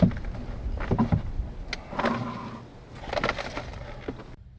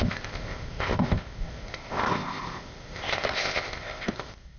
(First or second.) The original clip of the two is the first